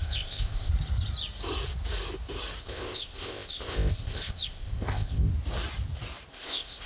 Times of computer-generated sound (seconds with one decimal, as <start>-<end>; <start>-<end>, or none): 0.0-0.7; 2.6-5.3; 6.3-6.9